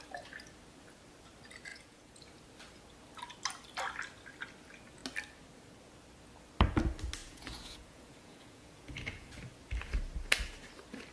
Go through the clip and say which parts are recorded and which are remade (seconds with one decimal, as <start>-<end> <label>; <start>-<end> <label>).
0.0-1.7 recorded; 1.7-2.2 remade; 2.2-7.2 recorded; 7.2-9.3 remade; 9.3-11.1 recorded